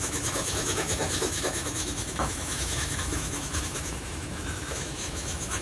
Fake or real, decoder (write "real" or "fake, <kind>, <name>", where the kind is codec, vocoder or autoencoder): fake, autoencoder, DAC-VAE